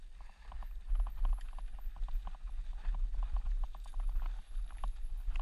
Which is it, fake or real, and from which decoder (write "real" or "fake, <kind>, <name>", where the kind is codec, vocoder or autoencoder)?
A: real